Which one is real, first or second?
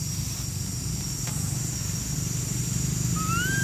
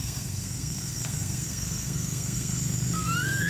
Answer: first